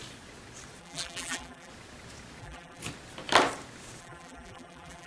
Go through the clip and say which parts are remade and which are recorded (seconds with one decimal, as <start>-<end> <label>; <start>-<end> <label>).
0.0-0.8 recorded; 0.8-1.7 remade; 1.7-2.4 recorded; 2.4-2.8 remade; 2.8-4.0 recorded; 4.0-5.1 remade